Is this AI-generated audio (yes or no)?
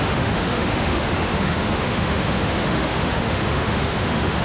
yes